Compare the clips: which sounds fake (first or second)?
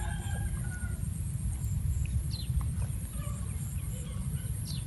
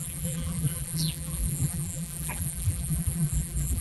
second